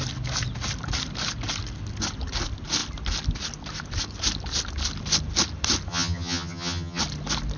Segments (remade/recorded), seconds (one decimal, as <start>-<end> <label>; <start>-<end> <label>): 0.0-5.9 recorded; 5.9-7.0 remade; 7.0-7.6 recorded